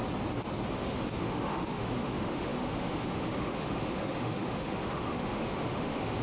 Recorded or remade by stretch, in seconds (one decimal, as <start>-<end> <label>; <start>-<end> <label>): 0.0-0.7 recorded; 0.7-6.2 remade